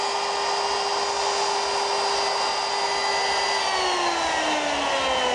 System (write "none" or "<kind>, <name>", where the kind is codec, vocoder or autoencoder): none